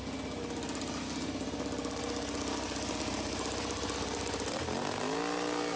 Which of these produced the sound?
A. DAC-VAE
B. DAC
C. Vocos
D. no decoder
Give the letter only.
D